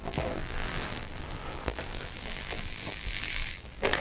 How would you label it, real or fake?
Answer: fake